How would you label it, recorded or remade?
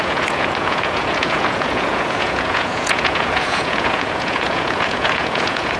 remade